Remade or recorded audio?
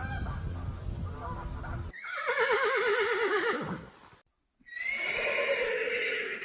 recorded